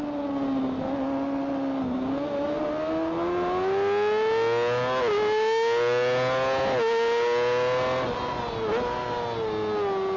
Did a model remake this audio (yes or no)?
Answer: no